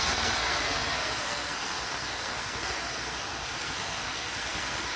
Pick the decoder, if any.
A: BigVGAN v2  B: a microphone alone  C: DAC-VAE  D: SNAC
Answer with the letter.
D